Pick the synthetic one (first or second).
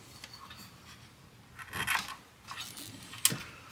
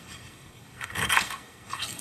second